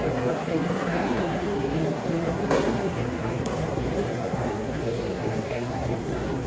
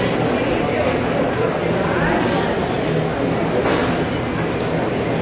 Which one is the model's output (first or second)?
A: first